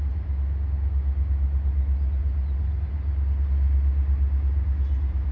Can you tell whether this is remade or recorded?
recorded